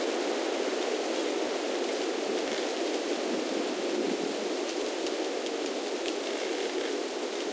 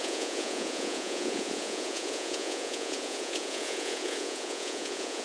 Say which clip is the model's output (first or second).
second